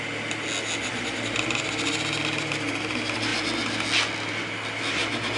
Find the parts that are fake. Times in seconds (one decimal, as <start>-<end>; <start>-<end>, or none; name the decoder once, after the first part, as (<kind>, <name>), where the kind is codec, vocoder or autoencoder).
none